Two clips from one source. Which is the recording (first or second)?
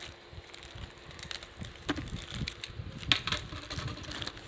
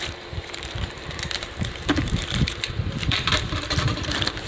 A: first